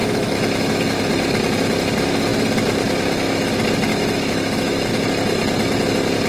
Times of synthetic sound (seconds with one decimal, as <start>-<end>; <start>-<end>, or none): 0.0-1.0; 3.9-4.9